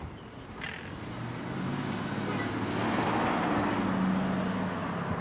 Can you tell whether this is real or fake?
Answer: real